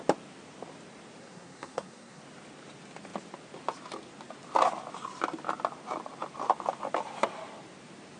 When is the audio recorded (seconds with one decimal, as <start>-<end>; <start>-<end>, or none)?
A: 0.0-1.2; 2.2-8.2